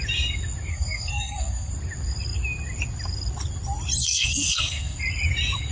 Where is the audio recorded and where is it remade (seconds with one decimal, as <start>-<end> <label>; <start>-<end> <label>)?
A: 0.0-0.7 recorded; 0.7-1.7 remade; 1.7-4.0 recorded; 4.0-5.0 remade; 5.0-5.7 recorded